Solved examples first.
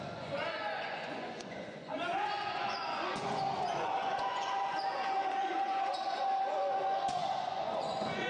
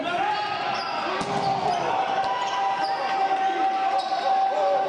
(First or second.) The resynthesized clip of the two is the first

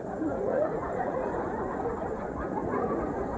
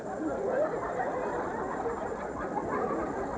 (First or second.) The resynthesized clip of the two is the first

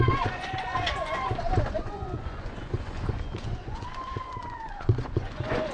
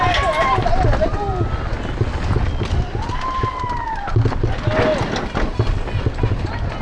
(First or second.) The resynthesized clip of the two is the first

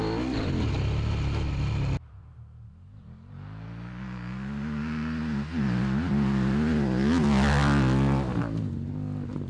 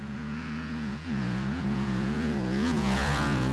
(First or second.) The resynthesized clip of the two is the second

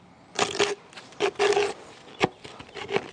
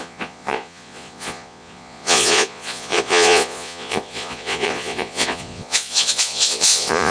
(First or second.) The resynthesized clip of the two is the second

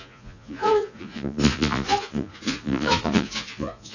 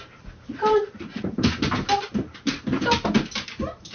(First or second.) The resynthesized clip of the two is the first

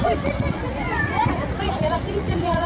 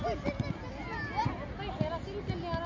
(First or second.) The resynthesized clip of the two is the first